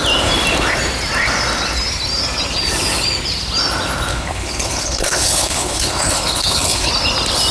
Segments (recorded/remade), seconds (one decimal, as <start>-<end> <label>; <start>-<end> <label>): 0.0-4.1 recorded; 4.1-6.9 remade; 6.9-7.5 recorded